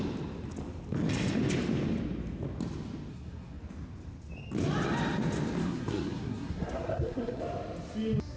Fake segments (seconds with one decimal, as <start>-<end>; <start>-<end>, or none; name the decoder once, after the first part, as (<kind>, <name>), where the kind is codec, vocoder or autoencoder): 3.1-3.6 (codec, SNAC); 5.6-7.4